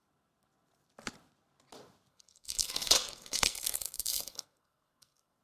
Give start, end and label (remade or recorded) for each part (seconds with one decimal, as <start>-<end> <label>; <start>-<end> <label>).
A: 0.0-2.1 recorded; 2.1-5.4 remade